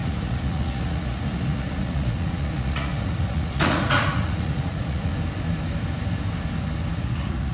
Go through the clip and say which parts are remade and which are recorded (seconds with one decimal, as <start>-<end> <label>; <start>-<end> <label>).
0.0-5.1 remade; 5.1-7.0 recorded; 7.0-7.5 remade